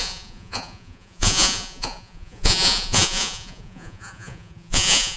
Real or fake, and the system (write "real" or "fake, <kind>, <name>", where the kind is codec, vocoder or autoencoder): fake, vocoder, Vocos